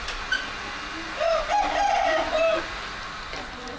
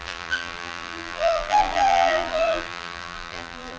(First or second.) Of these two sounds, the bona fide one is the first